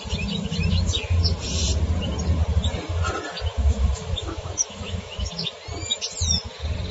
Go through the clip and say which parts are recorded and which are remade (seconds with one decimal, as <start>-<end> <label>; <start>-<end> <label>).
0.0-3.5 recorded; 3.5-5.3 remade; 5.3-6.9 recorded